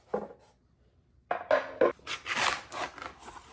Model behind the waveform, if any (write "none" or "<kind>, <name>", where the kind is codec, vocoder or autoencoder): none